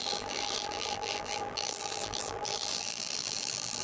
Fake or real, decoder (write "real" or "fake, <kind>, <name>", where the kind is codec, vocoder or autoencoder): fake, vocoder, BigVGAN v2